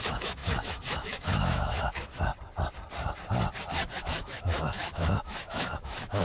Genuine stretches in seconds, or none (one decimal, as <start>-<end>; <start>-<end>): 2.3-4.0